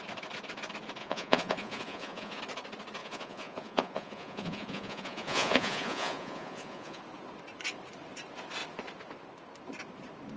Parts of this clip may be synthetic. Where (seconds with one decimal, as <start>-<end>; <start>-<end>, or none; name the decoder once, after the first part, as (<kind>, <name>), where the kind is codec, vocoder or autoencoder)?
1.0-2.4 (vocoder, Vocos); 3.0-7.0